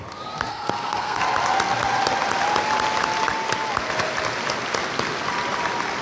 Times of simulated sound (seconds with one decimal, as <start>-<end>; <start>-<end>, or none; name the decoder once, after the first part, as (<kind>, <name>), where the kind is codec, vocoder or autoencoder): 0.5-1.2 (codec, SNAC)